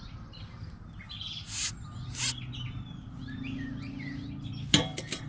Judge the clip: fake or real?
real